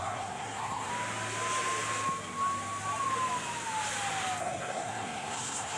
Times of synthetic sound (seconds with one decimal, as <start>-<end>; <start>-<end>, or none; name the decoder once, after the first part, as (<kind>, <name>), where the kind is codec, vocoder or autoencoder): 0.0-0.9 (codec, SNAC); 4.4-5.8